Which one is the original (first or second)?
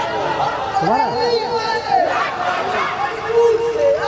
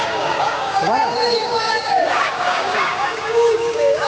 first